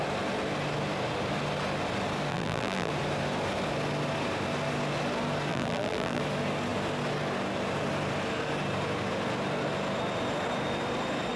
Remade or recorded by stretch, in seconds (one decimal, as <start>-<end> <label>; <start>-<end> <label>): 0.0-2.3 recorded; 2.3-2.9 remade; 2.9-5.5 recorded; 5.5-6.2 remade; 6.2-11.4 recorded